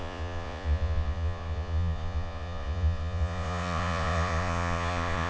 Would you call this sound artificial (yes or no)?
yes